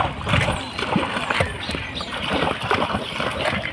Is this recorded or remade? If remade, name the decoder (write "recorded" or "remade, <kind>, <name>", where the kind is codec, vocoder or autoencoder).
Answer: remade, vocoder, BigVGAN v2